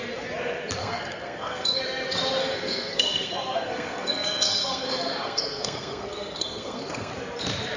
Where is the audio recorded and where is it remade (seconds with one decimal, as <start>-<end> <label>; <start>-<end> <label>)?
0.0-0.8 recorded; 0.8-1.8 remade; 1.8-2.4 recorded; 2.4-7.1 remade; 7.1-7.8 recorded